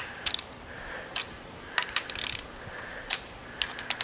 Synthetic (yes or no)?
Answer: no